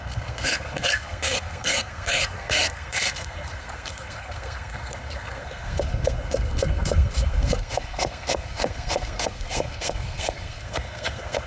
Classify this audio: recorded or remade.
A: remade